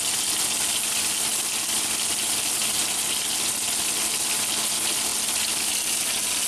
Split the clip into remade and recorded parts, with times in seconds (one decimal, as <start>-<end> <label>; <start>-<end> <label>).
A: 0.0-6.5 recorded